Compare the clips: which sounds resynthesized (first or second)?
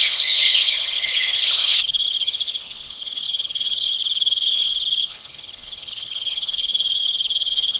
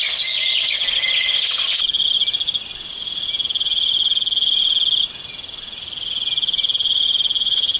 first